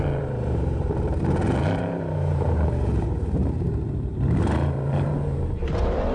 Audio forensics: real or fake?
fake